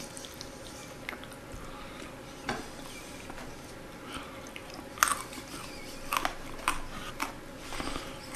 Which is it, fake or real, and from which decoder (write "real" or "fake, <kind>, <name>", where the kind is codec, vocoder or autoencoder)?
real